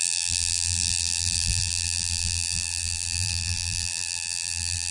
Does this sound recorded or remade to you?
remade